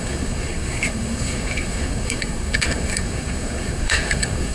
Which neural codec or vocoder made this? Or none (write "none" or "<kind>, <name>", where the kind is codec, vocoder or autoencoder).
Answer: codec, SNAC